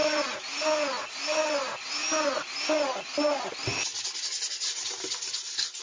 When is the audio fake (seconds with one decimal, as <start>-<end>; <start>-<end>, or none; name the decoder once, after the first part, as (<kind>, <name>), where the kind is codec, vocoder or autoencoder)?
none